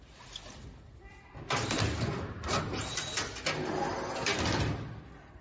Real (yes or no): yes